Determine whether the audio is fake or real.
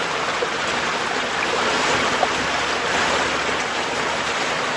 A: real